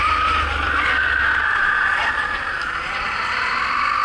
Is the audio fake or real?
fake